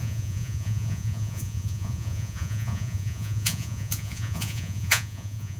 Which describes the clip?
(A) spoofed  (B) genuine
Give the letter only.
A